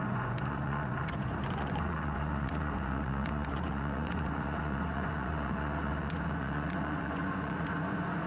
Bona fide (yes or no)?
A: no